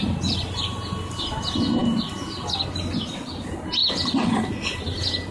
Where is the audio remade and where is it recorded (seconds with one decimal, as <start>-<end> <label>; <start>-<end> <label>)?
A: 0.0-5.3 recorded